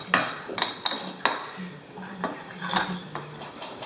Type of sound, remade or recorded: recorded